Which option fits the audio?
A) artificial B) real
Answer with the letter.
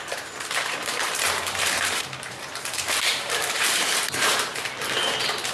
A